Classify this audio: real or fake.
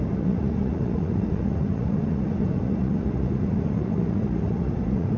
fake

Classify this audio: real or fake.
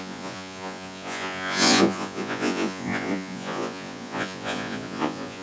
fake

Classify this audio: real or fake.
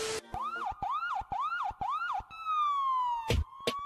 real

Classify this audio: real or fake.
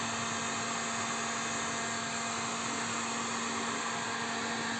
real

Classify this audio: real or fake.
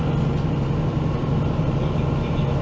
real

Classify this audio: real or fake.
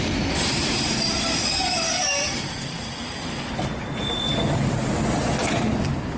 real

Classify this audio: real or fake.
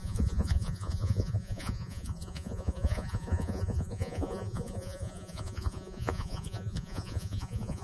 fake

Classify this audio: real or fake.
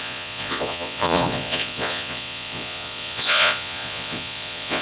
fake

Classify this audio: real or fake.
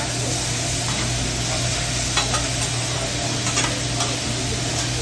real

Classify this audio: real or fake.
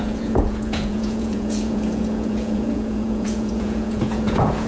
fake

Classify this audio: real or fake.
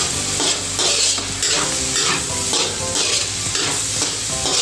real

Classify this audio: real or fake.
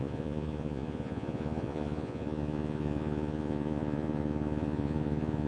fake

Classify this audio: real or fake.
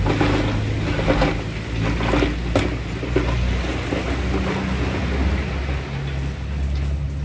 real